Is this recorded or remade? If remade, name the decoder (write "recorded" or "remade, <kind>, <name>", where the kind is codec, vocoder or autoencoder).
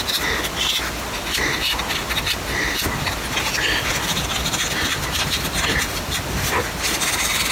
recorded